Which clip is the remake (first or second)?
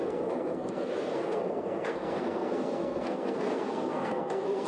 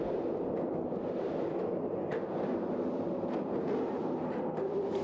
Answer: first